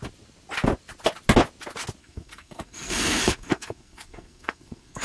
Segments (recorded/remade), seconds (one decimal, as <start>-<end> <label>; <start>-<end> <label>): 0.0-2.0 recorded; 2.0-5.0 remade